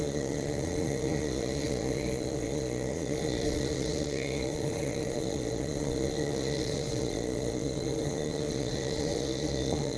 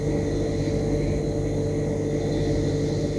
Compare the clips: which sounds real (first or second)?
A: second